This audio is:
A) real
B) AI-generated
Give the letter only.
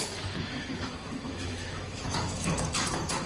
B